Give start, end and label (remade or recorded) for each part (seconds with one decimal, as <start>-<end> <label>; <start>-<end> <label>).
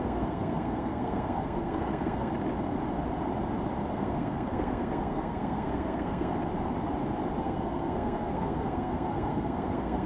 0.0-2.3 remade; 2.3-3.9 recorded; 3.9-6.4 remade; 6.4-7.4 recorded; 7.4-10.1 remade